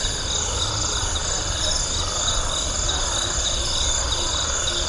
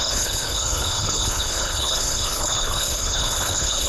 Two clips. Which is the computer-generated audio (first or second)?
second